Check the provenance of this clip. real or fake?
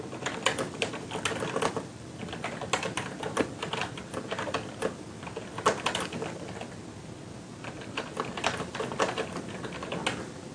real